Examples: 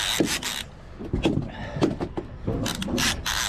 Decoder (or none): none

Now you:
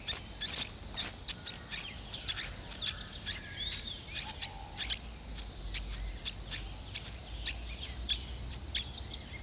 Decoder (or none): none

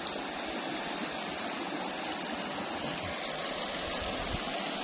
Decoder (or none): none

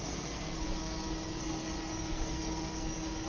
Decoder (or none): codec, SNAC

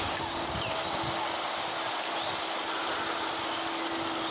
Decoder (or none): none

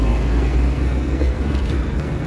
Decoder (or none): codec, SNAC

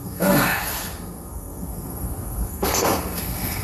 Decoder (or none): codec, SNAC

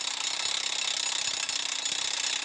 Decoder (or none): none